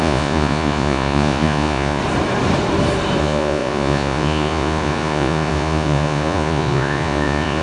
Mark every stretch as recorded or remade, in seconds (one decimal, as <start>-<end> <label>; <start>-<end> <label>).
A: 0.0-2.0 remade; 2.0-3.2 recorded; 3.2-7.6 remade